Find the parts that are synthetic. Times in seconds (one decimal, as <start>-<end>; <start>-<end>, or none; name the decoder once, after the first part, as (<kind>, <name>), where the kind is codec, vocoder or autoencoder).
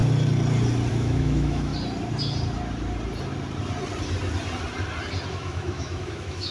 0.9-1.7 (autoencoder, DAC-VAE); 5.3-6.5